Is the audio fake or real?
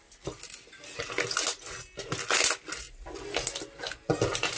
real